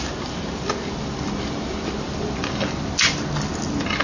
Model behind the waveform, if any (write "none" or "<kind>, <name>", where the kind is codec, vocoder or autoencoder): none